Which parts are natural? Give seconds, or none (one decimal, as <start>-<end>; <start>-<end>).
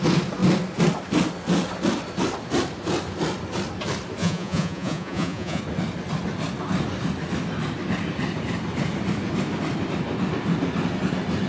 0.0-4.2; 5.6-11.5